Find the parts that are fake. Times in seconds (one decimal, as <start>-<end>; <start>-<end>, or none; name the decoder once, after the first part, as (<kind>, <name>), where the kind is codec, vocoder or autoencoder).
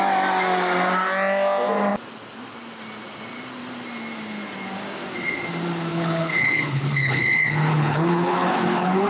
5.9-9.1 (codec, HILCodec)